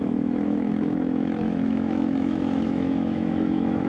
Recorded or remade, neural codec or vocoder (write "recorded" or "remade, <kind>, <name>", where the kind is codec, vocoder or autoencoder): remade, autoencoder, DAC-VAE